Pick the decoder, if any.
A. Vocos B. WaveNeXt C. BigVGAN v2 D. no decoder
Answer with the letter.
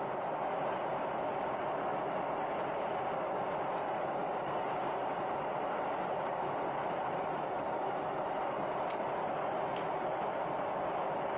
D